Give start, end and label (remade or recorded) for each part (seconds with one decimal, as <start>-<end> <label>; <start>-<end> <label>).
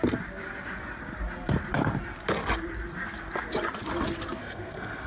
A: 0.0-4.4 recorded; 4.4-5.1 remade